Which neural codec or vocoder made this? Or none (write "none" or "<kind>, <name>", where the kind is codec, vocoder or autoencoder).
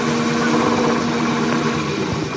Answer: none